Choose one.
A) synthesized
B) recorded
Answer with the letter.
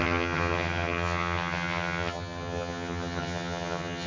A